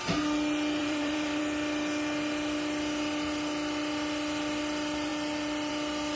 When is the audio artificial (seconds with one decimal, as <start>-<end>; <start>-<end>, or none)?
0.8-1.4